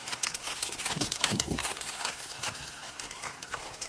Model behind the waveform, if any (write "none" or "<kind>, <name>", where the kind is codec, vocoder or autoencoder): codec, SNAC